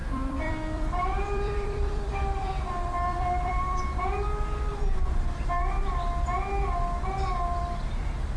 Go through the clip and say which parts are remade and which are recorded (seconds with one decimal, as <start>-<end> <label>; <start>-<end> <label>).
0.0-3.8 remade; 3.8-8.4 recorded